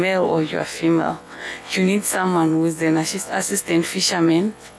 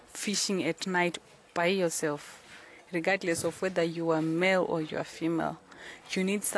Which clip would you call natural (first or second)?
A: second